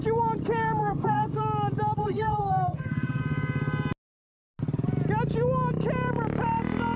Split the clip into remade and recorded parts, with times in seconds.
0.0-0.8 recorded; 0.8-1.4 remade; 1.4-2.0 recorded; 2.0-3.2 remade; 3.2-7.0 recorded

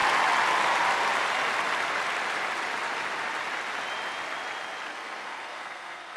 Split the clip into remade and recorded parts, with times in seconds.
0.0-4.9 recorded; 4.9-6.2 remade

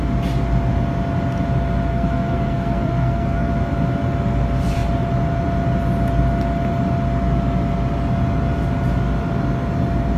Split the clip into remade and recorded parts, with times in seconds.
0.0-1.9 recorded; 1.9-3.5 remade; 3.5-10.2 recorded

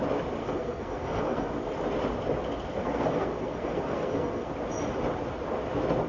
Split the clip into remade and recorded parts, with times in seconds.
0.0-0.4 recorded; 0.4-1.5 remade; 1.5-2.8 recorded; 2.8-4.5 remade; 4.5-6.1 recorded

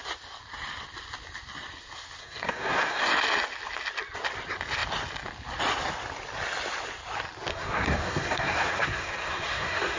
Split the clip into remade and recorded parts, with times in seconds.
0.0-2.2 recorded; 2.2-3.0 remade; 3.0-7.5 recorded; 7.5-10.0 remade

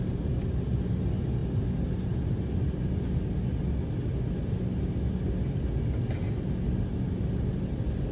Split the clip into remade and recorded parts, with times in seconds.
0.0-8.1 recorded

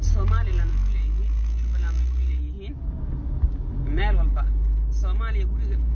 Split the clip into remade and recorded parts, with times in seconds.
0.0-5.9 recorded